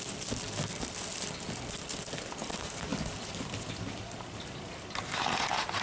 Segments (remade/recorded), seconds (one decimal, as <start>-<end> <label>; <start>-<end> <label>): 0.0-5.8 recorded